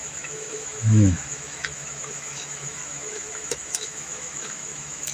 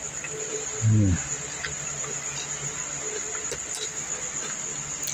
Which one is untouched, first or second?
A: second